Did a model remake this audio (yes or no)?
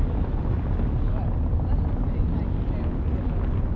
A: no